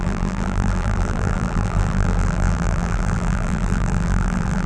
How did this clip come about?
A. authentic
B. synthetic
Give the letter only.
B